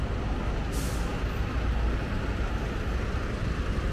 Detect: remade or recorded recorded